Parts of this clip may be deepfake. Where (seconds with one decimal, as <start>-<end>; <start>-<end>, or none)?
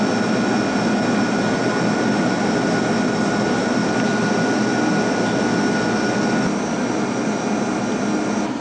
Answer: none